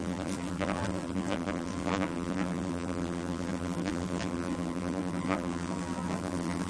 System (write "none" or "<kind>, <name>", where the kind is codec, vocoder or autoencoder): vocoder, BigVGAN v2